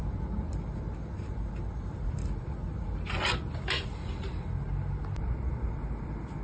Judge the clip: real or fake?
real